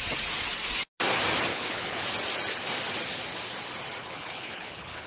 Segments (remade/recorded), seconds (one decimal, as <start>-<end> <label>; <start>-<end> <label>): 0.0-1.5 recorded; 1.5-2.1 remade; 2.1-4.0 recorded; 4.0-5.1 remade

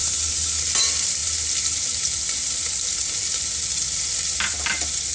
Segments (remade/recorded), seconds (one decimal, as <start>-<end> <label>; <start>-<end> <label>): 0.0-5.1 recorded